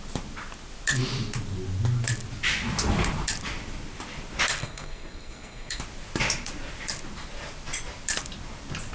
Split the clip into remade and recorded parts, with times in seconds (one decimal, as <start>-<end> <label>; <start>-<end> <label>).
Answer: 0.0-4.6 recorded; 4.6-5.8 remade; 5.8-8.9 recorded